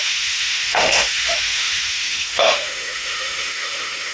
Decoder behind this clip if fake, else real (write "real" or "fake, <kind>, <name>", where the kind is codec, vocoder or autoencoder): fake, autoencoder, DAC-VAE